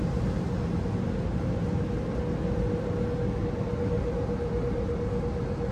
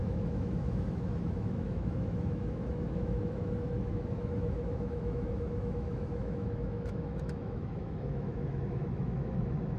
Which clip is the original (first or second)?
first